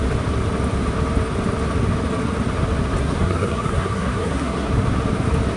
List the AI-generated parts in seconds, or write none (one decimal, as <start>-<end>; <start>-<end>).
3.0-4.7